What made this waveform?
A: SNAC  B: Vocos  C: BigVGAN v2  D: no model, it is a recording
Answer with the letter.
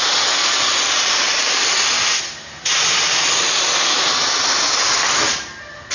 D